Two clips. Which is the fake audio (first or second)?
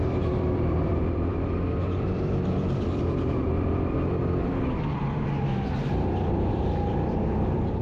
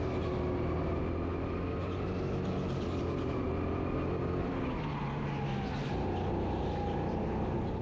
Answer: first